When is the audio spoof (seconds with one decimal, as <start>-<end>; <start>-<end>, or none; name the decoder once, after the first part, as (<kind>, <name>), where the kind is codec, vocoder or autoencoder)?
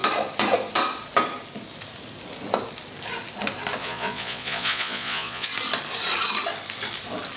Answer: 3.8-5.5 (vocoder, Vocos)